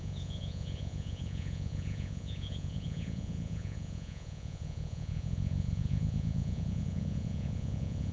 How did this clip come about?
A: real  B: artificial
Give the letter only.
B